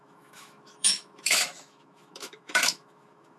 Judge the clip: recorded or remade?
remade